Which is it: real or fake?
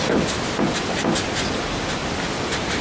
real